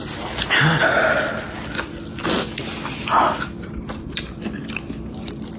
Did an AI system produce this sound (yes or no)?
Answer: no